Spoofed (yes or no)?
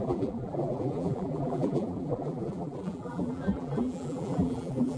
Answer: yes